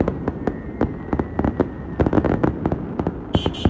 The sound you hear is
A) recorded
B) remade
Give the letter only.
A